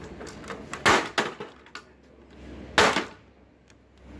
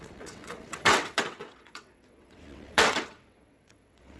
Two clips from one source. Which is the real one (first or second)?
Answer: first